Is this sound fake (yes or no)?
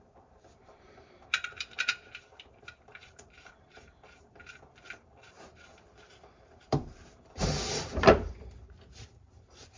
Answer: yes